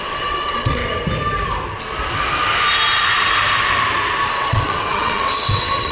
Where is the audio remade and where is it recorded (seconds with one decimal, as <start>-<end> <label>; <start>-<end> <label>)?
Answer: 0.0-0.8 remade; 0.8-4.3 recorded; 4.3-5.9 remade